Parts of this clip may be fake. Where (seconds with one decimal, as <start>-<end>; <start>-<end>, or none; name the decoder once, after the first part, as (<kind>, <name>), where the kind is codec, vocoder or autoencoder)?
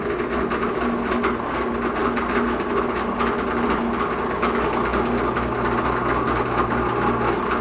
none